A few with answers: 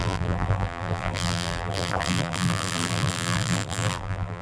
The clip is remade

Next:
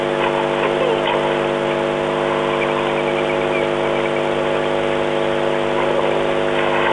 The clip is recorded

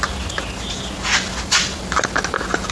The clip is recorded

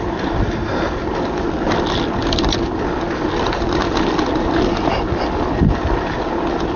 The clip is recorded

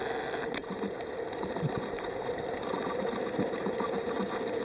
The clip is recorded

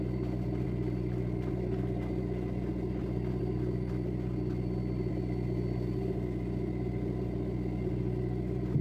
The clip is recorded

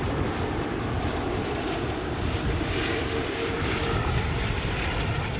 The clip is remade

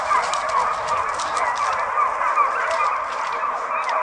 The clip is recorded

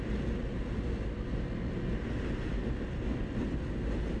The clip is recorded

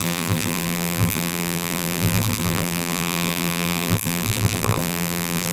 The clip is remade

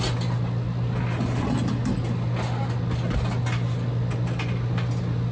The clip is recorded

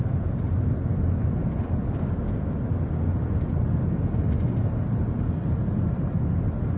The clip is recorded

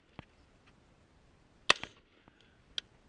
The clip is recorded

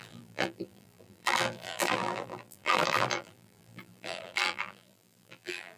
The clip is remade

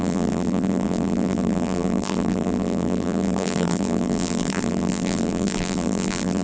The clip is remade